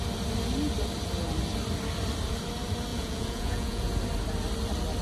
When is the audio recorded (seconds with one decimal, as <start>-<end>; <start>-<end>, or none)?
0.0-2.9; 4.0-5.0